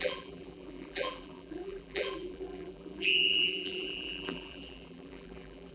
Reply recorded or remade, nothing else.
remade